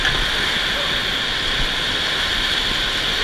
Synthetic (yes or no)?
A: no